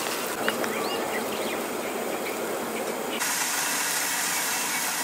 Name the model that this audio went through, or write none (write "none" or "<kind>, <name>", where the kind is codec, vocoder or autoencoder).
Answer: none